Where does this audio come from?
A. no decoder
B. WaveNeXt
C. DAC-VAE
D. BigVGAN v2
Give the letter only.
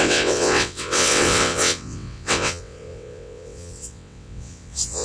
B